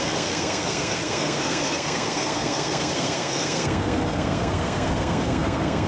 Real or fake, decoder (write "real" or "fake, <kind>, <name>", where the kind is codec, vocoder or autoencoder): fake, codec, SNAC